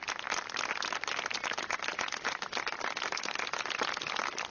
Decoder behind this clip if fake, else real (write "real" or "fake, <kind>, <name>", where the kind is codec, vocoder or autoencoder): real